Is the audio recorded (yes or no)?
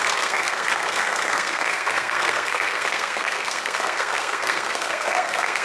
no